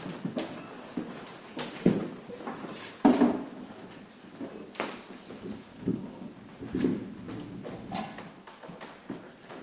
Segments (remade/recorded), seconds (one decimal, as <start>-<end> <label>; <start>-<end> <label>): 0.0-5.7 recorded; 5.7-6.3 remade; 6.3-9.6 recorded

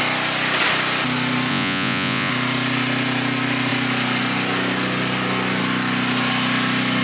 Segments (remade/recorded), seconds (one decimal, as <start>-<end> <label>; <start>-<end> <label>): 0.0-1.5 recorded; 1.5-2.3 remade; 2.3-7.0 recorded

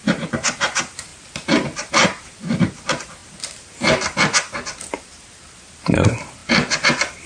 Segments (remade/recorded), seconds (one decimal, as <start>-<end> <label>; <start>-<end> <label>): 0.0-3.2 remade; 3.2-4.9 recorded; 4.9-6.4 remade; 6.4-7.3 recorded

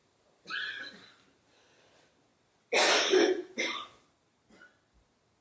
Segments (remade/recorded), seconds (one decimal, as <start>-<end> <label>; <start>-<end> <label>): 0.0-1.8 remade; 1.8-5.4 recorded

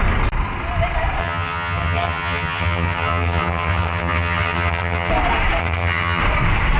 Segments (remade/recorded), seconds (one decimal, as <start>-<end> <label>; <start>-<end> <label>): 0.0-1.2 recorded; 1.2-5.1 remade; 5.1-5.6 recorded; 5.6-6.2 remade; 6.2-6.8 recorded